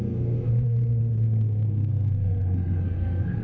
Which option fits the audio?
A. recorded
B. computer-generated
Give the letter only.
B